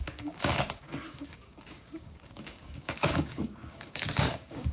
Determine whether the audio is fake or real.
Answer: fake